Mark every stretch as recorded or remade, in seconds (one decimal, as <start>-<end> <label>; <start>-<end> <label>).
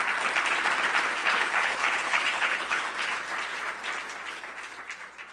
0.0-1.2 recorded; 1.2-2.8 remade; 2.8-5.3 recorded